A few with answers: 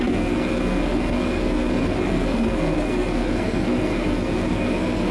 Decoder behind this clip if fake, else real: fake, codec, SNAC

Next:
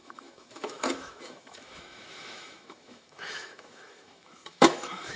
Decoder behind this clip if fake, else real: fake, autoencoder, DAC-VAE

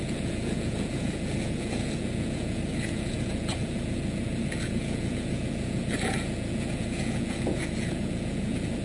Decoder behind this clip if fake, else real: fake, vocoder, Vocos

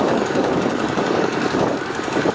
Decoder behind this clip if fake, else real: fake, codec, DAC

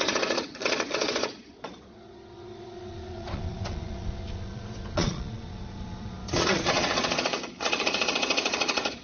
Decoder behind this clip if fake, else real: fake, vocoder, Vocos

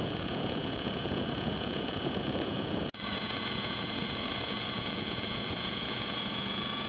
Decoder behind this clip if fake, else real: fake, vocoder, Vocos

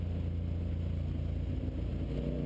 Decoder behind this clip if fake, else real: real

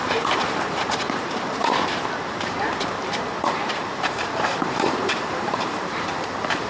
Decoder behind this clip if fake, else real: fake, vocoder, BigVGAN v2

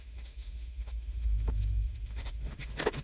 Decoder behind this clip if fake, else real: fake, autoencoder, DAC-VAE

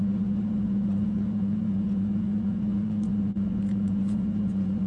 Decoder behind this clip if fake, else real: fake, vocoder, Vocos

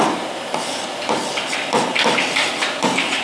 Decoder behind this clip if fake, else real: real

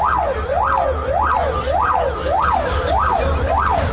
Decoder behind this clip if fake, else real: real